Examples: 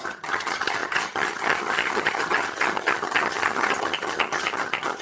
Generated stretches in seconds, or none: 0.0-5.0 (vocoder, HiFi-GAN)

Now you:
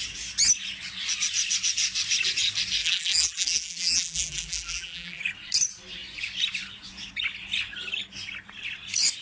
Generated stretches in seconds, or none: 2.8-5.2 (vocoder, BigVGAN v2)

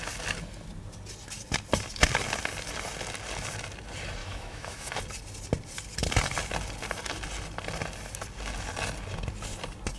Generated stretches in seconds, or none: 4.2-5.0 (autoencoder, DAC-VAE)